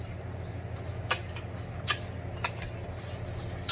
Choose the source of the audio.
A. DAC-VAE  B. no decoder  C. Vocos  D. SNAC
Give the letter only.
B